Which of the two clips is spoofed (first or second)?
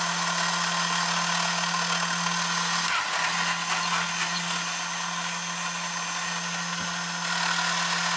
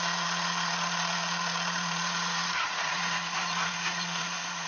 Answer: second